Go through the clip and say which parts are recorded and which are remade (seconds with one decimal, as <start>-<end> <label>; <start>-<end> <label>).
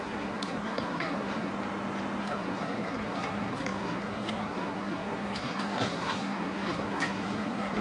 0.0-1.5 remade; 1.5-2.2 recorded; 2.2-7.8 remade